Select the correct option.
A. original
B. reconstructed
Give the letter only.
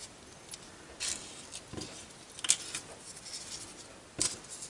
A